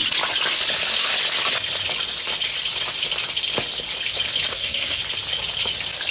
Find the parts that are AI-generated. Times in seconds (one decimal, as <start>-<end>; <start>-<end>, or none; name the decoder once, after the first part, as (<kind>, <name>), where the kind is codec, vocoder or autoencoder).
4.5-5.0 (codec, SNAC)